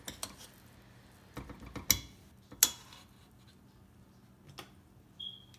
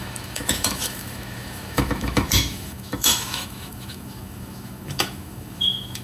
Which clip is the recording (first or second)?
first